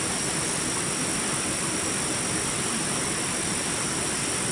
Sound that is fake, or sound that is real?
real